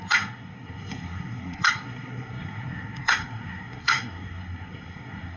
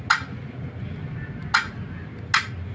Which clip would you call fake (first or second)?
first